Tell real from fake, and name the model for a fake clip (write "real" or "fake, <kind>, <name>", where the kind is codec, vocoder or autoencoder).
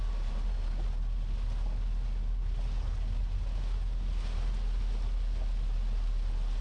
real